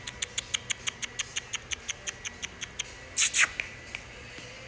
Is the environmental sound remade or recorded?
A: recorded